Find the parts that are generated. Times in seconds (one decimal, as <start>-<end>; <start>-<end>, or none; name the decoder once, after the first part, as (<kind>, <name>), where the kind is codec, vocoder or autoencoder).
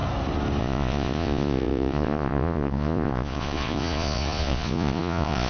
0.6-5.5 (vocoder, Vocos)